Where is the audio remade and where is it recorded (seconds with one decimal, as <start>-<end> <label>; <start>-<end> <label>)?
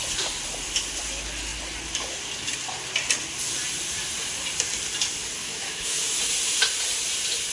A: 0.0-5.4 recorded; 5.4-6.2 remade; 6.2-7.5 recorded